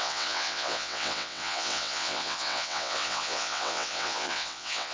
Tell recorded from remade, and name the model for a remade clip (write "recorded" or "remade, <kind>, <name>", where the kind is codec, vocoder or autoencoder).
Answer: remade, vocoder, WaveNeXt